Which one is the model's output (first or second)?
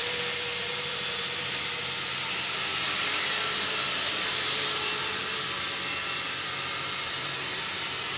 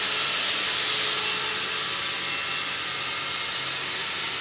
first